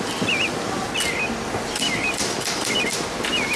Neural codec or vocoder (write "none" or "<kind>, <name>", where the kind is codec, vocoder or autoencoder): none